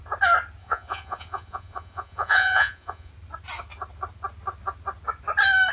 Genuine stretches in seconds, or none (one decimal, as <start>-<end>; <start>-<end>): 0.0-0.6; 3.1-5.7